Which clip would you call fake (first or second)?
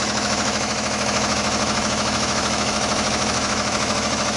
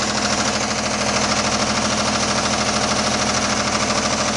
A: first